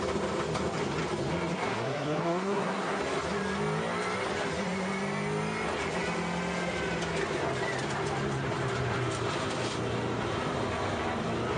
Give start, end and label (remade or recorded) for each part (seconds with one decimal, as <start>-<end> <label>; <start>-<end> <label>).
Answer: 0.0-1.5 recorded; 1.5-3.0 remade; 3.0-11.6 recorded